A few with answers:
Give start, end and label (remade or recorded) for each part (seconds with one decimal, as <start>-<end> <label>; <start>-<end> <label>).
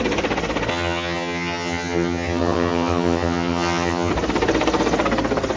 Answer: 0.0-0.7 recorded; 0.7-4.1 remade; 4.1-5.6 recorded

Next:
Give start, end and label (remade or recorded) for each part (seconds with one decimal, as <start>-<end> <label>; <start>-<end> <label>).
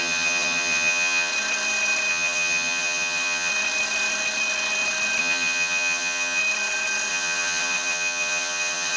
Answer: 0.0-1.3 remade; 1.3-2.1 recorded; 2.1-3.5 remade; 3.5-5.2 recorded; 5.2-6.4 remade; 6.4-7.1 recorded; 7.1-9.0 remade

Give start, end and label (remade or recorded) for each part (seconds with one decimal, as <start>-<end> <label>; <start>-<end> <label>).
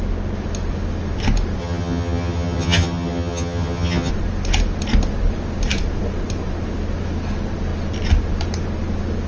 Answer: 0.0-1.6 recorded; 1.6-4.1 remade; 4.1-9.3 recorded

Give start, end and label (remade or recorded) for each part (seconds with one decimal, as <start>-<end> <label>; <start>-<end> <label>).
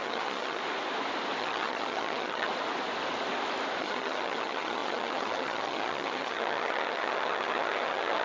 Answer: 0.0-0.6 remade; 0.6-1.4 recorded; 1.4-2.5 remade; 2.5-3.8 recorded; 3.8-8.2 remade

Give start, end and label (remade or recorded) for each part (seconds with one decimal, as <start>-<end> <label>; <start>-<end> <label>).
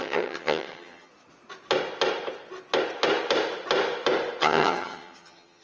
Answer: 0.0-1.1 remade; 1.1-4.4 recorded; 4.4-5.6 remade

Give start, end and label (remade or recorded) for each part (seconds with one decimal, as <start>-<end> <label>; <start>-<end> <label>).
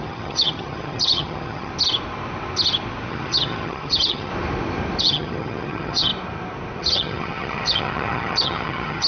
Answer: 0.0-1.7 remade; 1.7-3.1 recorded; 3.1-4.3 remade; 4.3-5.0 recorded; 5.0-6.1 remade; 6.1-6.8 recorded; 6.8-9.1 remade